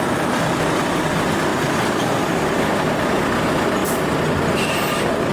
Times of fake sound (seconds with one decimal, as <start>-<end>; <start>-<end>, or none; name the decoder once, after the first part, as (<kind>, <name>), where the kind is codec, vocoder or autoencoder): 1.5-2.8 (vocoder, BigVGAN v2)